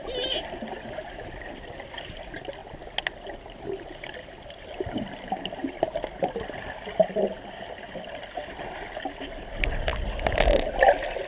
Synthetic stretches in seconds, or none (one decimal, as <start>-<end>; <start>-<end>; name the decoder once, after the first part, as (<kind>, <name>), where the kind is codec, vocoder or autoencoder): none